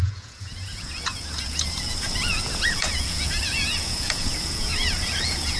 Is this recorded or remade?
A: remade